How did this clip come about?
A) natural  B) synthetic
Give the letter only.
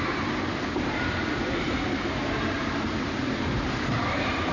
B